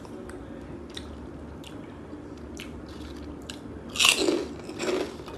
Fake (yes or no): no